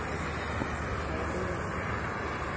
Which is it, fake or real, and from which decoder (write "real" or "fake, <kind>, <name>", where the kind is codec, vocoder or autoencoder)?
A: real